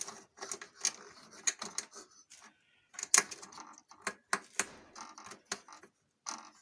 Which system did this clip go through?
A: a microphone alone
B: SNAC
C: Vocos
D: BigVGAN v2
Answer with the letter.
A